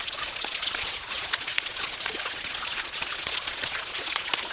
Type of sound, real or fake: fake